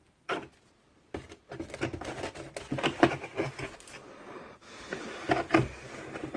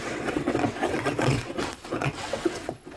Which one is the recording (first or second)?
first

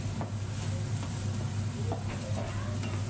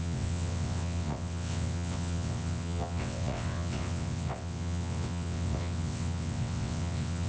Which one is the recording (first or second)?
first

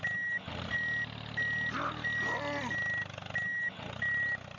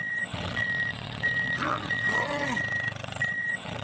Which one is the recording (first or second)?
first